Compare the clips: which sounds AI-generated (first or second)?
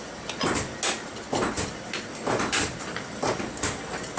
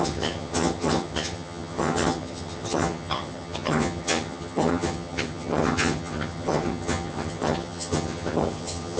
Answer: second